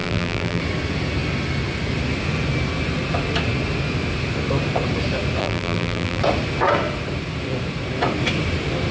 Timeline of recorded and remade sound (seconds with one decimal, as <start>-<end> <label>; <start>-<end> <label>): 0.0-0.6 remade; 0.6-5.4 recorded; 5.4-6.2 remade; 6.2-8.9 recorded